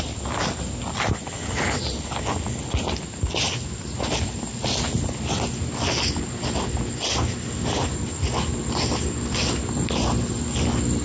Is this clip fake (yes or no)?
no